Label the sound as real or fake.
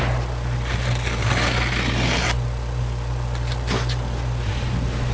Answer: real